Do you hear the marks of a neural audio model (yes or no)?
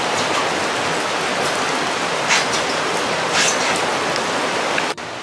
no